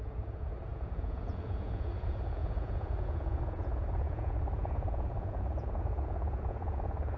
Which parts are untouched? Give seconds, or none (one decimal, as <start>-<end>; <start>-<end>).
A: none